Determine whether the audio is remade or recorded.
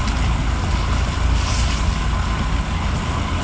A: recorded